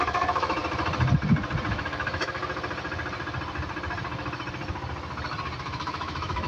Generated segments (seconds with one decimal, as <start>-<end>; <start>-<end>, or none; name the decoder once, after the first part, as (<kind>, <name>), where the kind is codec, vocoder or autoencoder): 0.0-0.6 (autoencoder, DAC-VAE); 1.7-2.4; 5.6-6.5